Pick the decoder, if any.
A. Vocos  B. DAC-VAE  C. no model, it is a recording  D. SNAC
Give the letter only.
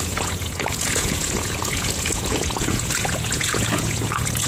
A